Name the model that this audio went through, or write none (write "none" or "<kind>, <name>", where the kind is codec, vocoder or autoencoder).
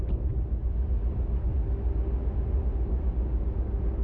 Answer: none